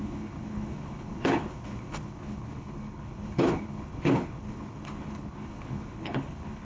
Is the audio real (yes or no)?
no